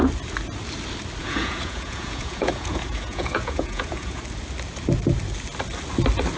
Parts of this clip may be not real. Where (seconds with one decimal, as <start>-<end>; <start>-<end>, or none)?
1.2-4.2